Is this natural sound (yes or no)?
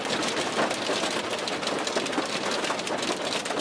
yes